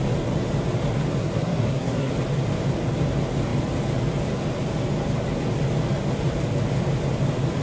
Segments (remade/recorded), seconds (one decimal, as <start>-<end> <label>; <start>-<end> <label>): 0.0-1.2 recorded; 1.2-2.1 remade; 2.1-7.6 recorded